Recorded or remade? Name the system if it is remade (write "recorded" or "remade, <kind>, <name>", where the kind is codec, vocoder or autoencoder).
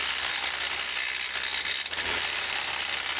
recorded